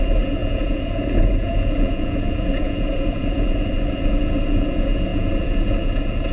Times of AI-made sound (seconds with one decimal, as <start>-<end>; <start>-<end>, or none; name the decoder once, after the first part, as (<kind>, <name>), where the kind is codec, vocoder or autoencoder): 0.0-6.3 (vocoder, Vocos)

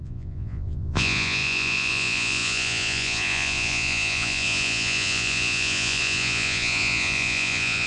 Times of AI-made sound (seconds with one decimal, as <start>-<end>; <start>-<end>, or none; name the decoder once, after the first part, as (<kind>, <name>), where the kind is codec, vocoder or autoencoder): 0.0-7.9 (vocoder, Vocos)

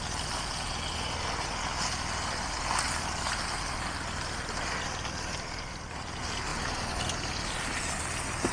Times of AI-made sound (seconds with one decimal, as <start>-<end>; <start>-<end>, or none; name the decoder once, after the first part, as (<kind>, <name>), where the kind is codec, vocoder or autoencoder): none

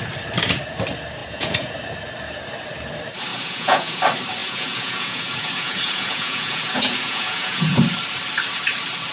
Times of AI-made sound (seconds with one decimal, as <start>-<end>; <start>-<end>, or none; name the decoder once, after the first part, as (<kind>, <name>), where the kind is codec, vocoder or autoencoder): 1.2-1.7 (vocoder, Vocos); 3.3-4.0; 4.4-7.8

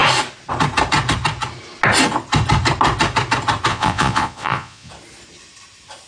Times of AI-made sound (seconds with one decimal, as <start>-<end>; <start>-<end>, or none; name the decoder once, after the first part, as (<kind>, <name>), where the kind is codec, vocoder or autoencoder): 3.7-4.9 (vocoder, Vocos)